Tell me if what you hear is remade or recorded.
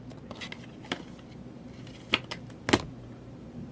recorded